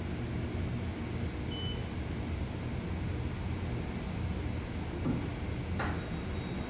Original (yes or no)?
yes